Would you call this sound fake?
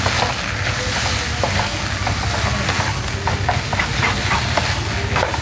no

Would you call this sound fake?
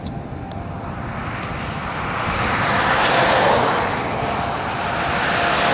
no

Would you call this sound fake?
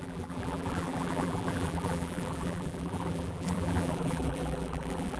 yes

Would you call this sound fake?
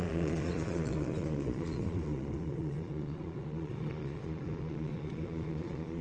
yes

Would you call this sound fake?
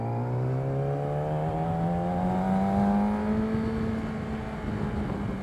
no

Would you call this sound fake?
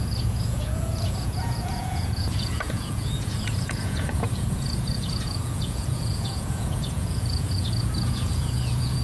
yes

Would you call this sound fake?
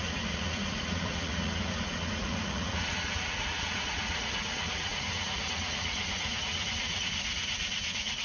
yes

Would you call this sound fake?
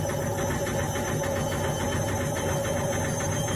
no